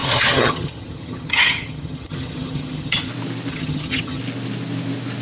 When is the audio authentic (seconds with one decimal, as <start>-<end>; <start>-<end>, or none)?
3.1-3.5; 4.2-5.2